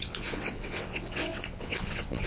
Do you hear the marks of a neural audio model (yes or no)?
yes